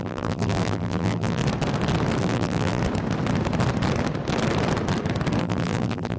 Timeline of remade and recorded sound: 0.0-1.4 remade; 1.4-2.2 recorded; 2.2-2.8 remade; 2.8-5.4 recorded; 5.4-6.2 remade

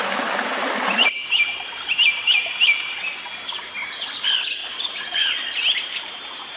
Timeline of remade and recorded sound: 0.0-1.2 recorded; 1.2-2.5 remade; 2.5-4.6 recorded; 4.6-6.6 remade

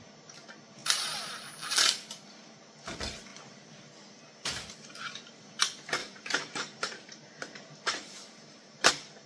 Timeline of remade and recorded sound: 0.0-6.0 recorded; 6.0-8.9 remade; 8.9-9.3 recorded

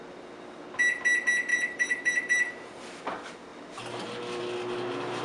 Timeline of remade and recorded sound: 0.0-1.5 recorded; 1.5-3.0 remade; 3.0-5.2 recorded